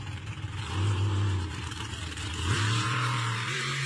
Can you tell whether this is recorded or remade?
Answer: remade